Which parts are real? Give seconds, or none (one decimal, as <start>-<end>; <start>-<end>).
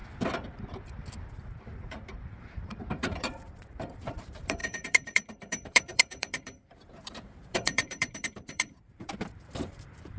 0.0-1.5